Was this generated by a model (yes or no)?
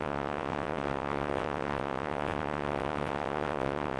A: yes